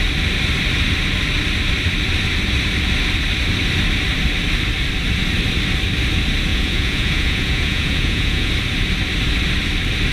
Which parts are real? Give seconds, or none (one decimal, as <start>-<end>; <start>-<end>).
0.0-6.5; 8.5-10.1